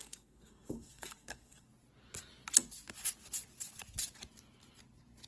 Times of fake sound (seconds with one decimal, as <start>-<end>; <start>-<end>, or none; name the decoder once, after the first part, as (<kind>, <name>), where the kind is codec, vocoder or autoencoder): 0.0-1.7 (codec, SNAC)